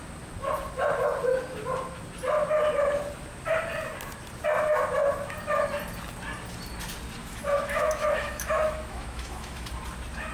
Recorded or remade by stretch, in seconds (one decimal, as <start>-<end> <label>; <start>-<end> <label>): 0.0-7.2 recorded; 7.2-9.7 remade; 9.7-10.3 recorded